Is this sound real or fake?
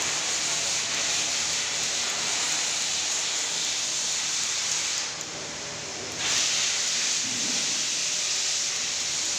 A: fake